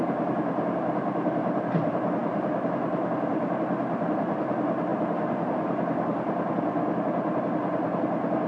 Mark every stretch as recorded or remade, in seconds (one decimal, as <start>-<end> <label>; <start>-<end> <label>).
0.0-8.5 recorded